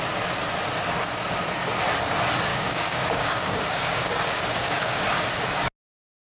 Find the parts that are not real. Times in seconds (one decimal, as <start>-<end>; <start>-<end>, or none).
2.5-5.0